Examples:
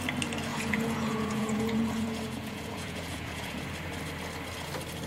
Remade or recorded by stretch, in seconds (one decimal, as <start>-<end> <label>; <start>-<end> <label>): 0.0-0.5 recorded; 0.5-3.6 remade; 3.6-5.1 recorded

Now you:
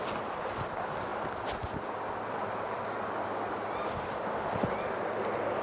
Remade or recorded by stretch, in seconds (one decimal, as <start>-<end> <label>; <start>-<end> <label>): 0.0-5.6 recorded

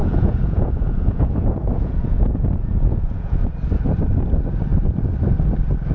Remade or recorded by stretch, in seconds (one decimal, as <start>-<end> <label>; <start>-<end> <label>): 0.0-3.5 remade; 3.5-5.9 recorded

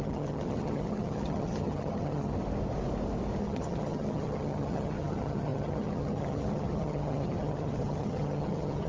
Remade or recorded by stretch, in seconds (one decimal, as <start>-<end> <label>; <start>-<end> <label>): 0.0-2.3 remade; 2.3-3.4 recorded; 3.4-8.9 remade